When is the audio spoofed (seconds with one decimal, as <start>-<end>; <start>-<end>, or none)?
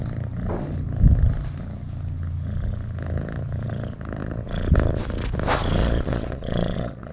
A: 5.8-7.1